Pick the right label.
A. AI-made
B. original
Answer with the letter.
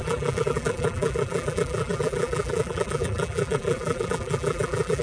A